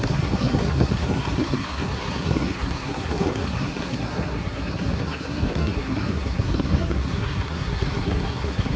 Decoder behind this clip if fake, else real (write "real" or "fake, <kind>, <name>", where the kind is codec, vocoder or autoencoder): fake, codec, SNAC